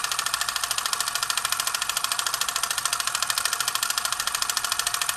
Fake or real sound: real